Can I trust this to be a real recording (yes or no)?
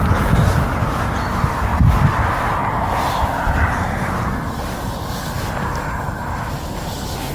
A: yes